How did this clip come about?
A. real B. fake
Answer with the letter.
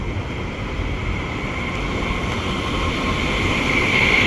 A